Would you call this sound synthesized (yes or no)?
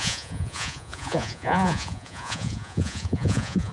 yes